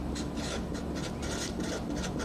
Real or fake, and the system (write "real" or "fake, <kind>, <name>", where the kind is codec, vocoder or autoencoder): real